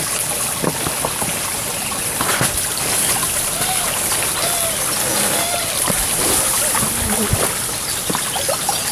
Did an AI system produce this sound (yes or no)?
no